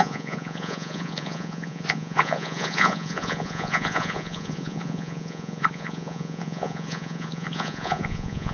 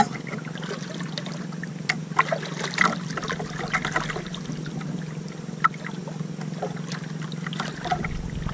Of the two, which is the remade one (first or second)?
first